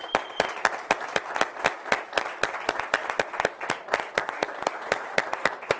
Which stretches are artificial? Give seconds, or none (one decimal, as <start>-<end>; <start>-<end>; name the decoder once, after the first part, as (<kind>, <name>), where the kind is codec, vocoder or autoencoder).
0.0-1.2 (vocoder, BigVGAN v2); 4.7-5.8